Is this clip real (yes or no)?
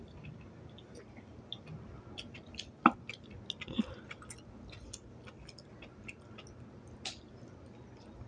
yes